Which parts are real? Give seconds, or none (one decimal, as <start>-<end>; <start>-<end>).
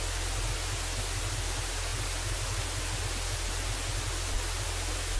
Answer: 0.0-5.2